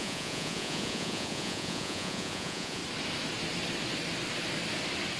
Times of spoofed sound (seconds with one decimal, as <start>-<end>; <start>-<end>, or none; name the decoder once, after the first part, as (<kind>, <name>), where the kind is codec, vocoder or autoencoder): 0.0-2.8 (vocoder, Vocos)